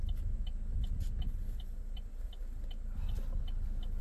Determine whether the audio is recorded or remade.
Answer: recorded